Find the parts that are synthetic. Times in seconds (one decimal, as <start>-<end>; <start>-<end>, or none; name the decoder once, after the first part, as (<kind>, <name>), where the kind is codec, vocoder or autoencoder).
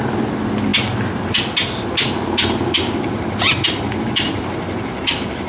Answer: none